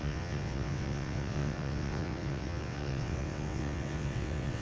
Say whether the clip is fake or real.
fake